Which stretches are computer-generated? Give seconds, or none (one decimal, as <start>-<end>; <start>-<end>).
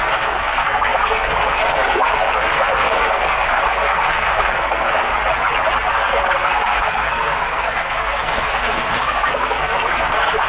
0.0-5.1; 5.9-10.5